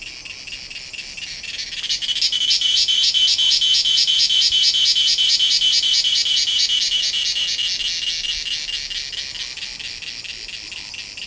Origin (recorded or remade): recorded